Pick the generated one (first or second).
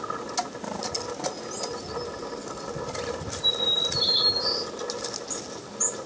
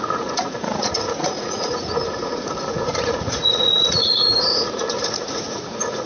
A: second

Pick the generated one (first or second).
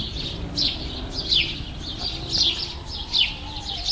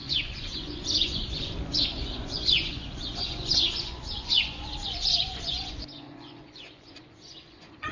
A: second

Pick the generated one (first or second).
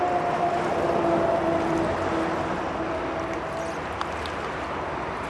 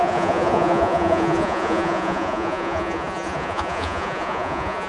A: second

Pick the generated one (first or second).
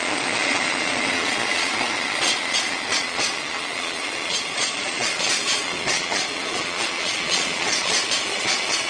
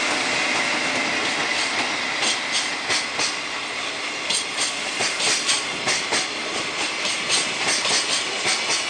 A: first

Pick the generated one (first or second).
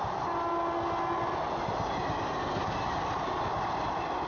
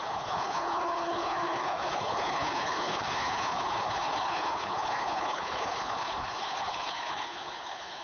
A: second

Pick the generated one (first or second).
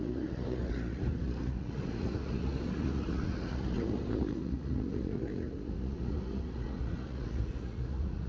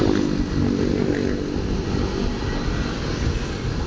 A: first